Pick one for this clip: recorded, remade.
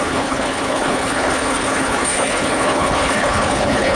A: remade